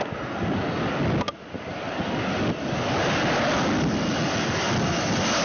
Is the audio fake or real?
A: real